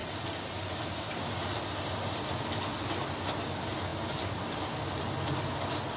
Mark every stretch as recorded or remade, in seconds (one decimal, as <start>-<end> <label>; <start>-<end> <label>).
0.0-1.2 remade; 1.2-6.0 recorded

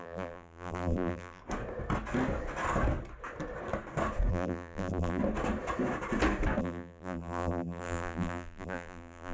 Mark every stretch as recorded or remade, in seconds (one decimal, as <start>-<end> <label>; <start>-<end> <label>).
0.0-1.4 remade; 1.4-4.3 recorded; 4.3-5.2 remade; 5.2-6.6 recorded; 6.6-9.3 remade

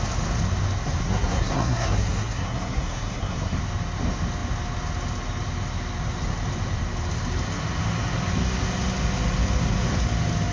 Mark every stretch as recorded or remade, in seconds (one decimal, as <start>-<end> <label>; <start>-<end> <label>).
0.0-1.0 recorded; 1.0-3.6 remade; 3.6-10.5 recorded

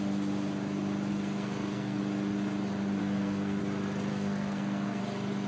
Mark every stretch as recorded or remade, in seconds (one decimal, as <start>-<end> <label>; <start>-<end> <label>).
0.0-1.1 recorded; 1.1-2.0 remade; 2.0-3.0 recorded; 3.0-3.6 remade; 3.6-4.1 recorded; 4.1-5.0 remade; 5.0-5.5 recorded